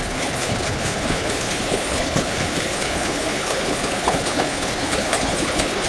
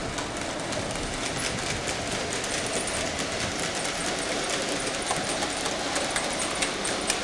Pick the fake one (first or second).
first